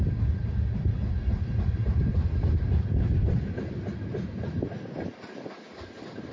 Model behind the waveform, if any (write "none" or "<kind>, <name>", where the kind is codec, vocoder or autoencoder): none